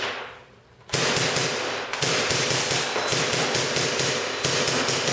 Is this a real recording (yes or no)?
yes